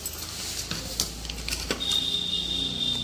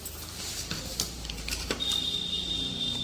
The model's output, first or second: second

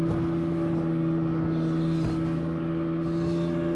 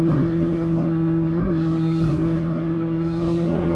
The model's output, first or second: second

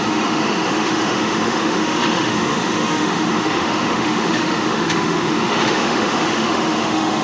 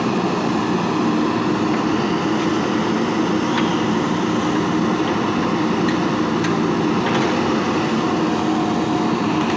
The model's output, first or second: first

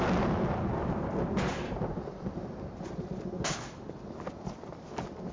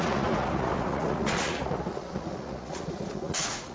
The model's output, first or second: second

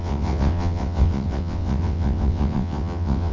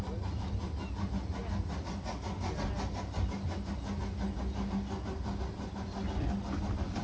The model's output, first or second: first